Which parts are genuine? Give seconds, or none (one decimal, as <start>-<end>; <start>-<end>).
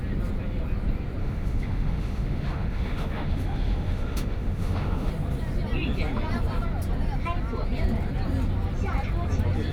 0.0-1.2; 5.1-9.7